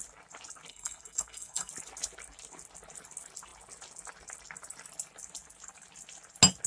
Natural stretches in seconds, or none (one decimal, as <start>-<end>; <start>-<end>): 0.0-0.7; 1.7-6.7

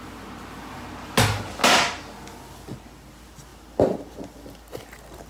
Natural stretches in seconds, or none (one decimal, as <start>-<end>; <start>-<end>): 0.0-5.3

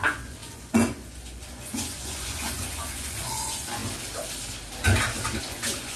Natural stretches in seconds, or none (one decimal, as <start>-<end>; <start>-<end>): 3.8-5.4

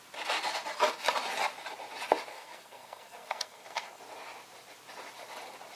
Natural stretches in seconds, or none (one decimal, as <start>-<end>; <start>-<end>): 0.0-2.3; 4.0-5.8

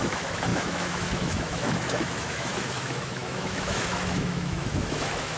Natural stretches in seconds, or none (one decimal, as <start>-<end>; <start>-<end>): none

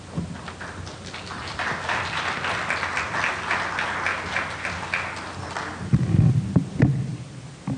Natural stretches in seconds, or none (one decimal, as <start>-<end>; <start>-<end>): 0.0-7.8

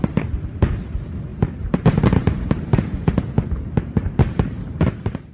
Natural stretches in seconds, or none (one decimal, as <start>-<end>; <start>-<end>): 0.0-1.3; 3.1-5.3